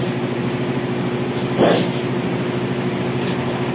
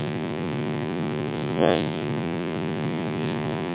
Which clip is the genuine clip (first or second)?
first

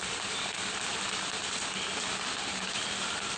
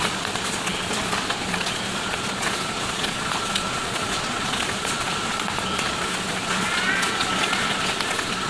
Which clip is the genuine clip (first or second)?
first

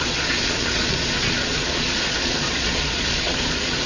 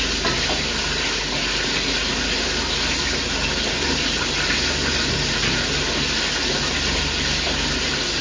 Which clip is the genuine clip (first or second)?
second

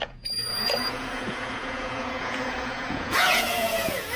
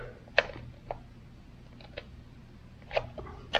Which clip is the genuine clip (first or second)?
second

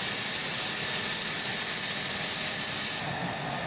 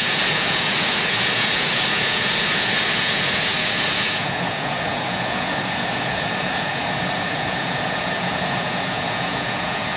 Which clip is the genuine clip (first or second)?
first